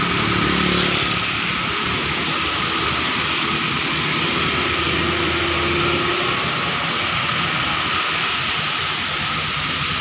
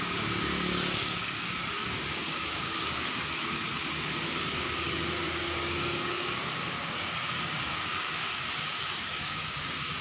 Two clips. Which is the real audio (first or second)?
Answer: first